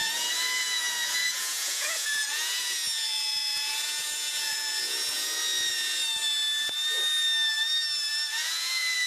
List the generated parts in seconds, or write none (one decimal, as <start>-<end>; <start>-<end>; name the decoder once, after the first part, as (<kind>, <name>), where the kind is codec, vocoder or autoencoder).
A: 0.0-6.0 (vocoder, Vocos); 8.3-9.1